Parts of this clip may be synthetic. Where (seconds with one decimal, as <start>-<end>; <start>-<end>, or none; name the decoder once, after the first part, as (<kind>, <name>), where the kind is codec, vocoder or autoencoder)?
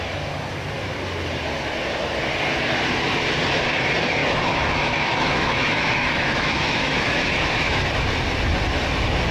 4.2-7.8 (autoencoder, DAC-VAE)